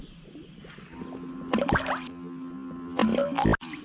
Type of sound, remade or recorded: recorded